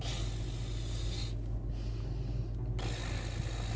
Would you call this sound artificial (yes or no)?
no